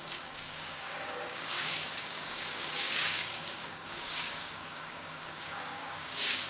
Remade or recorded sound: remade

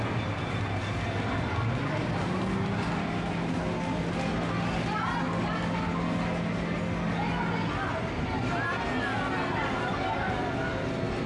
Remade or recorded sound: recorded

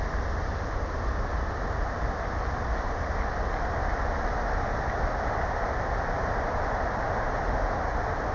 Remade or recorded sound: recorded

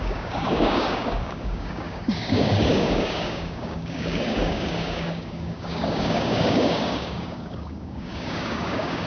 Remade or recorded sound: remade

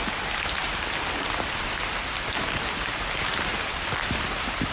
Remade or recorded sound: recorded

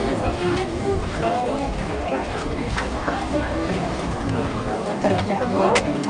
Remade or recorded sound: remade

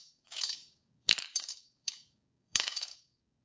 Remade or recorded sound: remade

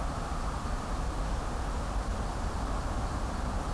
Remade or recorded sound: recorded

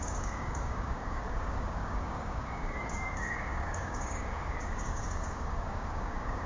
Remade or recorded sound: remade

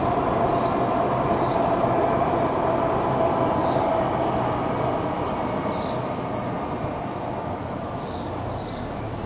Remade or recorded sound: recorded